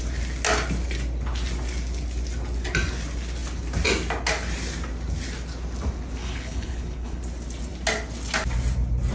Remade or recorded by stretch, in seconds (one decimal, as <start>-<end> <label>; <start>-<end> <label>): 0.0-6.2 recorded; 6.2-7.2 remade; 7.2-9.1 recorded